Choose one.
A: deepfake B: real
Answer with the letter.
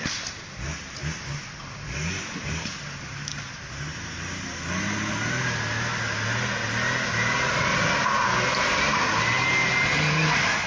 B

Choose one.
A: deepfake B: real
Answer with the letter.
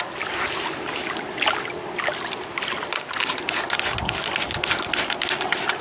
B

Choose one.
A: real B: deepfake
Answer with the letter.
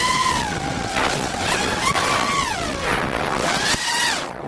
B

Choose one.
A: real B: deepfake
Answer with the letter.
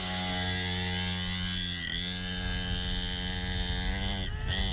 A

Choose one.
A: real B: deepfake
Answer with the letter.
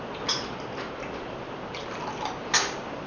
A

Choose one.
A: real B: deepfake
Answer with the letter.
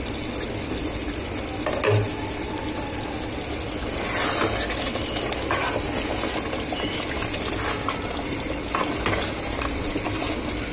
A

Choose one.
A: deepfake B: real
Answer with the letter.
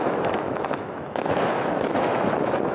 A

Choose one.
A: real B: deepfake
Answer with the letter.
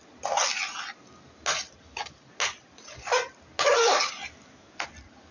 A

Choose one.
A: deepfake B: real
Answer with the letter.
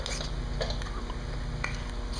B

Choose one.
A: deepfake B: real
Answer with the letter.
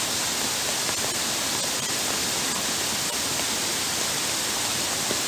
B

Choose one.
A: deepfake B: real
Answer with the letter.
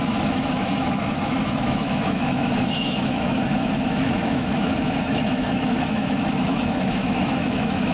A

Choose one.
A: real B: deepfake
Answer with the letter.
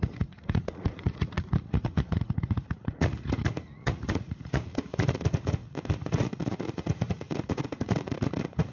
B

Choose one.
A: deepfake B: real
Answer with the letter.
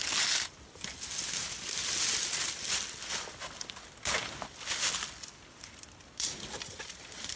B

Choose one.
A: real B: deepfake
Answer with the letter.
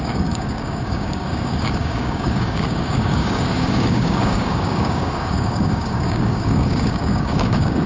B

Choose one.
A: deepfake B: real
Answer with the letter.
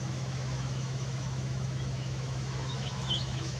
A